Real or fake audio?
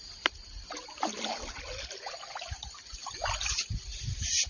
real